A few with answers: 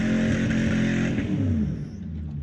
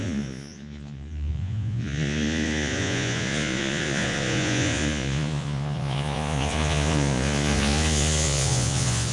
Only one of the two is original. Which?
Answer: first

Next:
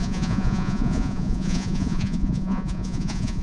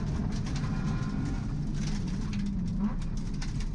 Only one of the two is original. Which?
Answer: second